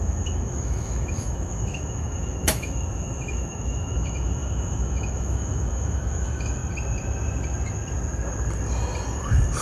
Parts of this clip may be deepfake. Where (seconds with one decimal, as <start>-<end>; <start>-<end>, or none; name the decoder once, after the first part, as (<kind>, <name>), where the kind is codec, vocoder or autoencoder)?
0.0-6.6 (autoencoder, DAC-VAE)